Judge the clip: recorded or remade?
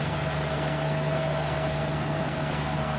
remade